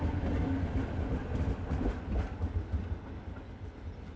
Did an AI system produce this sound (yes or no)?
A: no